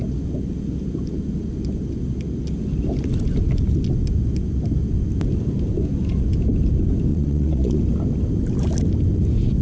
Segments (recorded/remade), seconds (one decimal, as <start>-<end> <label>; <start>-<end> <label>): 0.0-7.1 recorded; 7.1-7.8 remade; 7.8-9.6 recorded